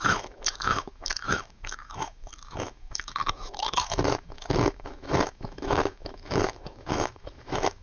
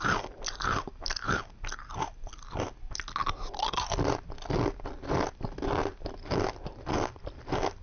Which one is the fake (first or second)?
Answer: first